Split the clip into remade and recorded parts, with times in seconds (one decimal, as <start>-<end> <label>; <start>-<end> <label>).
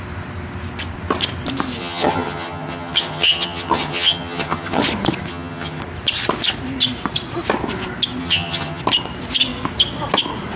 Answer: 0.0-1.8 recorded; 1.8-4.8 remade; 4.8-5.3 recorded; 5.3-5.8 remade; 5.8-8.2 recorded; 8.2-8.8 remade; 8.8-10.6 recorded